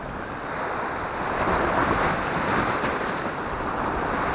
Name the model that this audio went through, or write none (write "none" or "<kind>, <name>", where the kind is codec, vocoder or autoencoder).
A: none